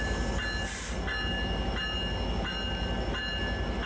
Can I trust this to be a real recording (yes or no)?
yes